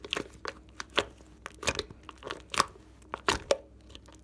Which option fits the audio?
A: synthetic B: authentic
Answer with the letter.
B